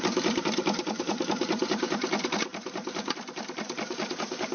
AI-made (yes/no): yes